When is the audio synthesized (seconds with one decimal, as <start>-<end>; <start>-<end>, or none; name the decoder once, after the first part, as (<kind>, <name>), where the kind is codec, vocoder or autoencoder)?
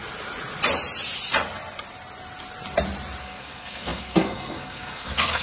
3.2-5.4 (codec, SNAC)